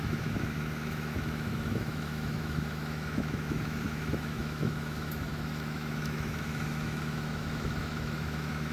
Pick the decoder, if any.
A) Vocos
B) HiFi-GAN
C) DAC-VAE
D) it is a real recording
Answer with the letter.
C